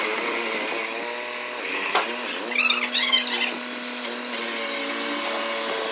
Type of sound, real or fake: real